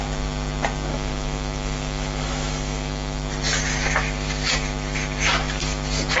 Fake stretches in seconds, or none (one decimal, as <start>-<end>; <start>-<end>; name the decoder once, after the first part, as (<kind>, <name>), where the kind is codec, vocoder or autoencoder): 0.9-3.2 (autoencoder, DAC-VAE)